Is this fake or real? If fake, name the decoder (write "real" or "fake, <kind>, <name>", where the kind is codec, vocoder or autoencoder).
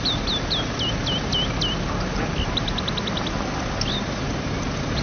real